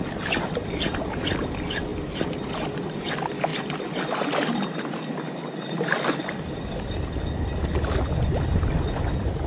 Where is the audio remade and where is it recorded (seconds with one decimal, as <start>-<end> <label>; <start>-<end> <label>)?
0.0-9.5 recorded